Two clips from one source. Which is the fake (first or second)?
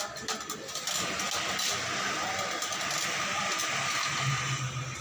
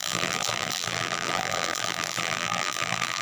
second